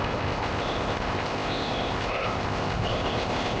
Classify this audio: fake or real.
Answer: fake